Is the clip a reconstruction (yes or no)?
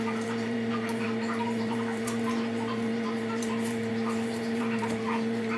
yes